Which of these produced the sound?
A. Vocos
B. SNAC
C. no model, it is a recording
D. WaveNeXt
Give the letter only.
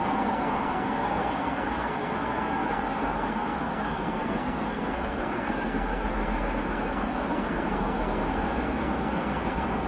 B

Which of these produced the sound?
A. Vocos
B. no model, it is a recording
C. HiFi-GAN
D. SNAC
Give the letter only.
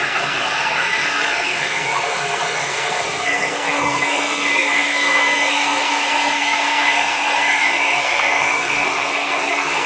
D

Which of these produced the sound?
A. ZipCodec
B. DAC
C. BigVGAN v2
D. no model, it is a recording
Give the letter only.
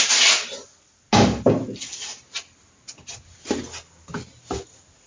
D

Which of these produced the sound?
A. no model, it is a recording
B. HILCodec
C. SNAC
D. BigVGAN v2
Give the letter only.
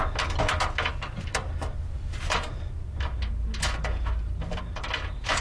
A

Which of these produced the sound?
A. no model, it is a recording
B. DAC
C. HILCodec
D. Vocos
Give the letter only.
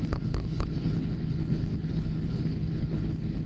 C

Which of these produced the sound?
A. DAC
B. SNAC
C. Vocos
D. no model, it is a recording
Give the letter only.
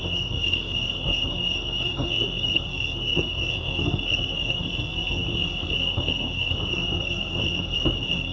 B